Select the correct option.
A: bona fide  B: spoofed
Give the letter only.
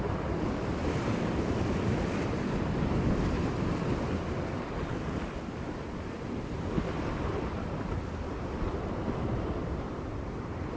B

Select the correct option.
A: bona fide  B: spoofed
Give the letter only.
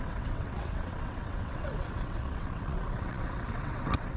B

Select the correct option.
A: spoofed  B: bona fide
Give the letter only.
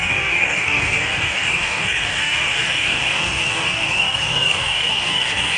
A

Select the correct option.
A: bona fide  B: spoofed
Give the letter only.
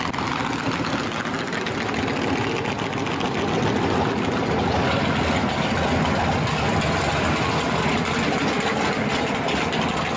A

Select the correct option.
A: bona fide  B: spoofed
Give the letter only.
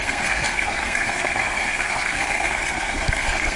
B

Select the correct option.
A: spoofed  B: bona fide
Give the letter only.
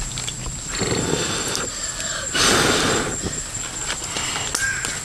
B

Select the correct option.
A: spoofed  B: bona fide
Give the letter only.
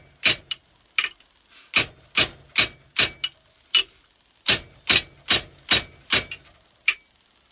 B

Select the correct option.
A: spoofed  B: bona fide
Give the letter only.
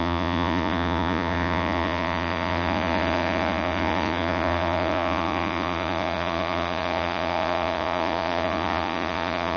A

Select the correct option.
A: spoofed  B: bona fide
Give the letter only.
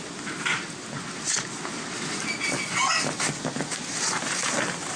B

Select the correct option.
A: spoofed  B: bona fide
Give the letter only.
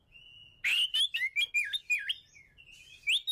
B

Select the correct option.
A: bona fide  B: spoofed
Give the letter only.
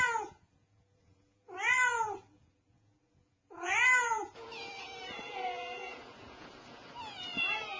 B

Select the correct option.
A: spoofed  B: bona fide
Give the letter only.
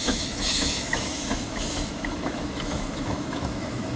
A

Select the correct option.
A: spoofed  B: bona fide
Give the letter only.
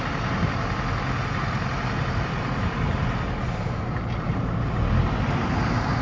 B